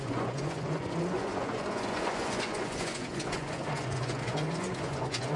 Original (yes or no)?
no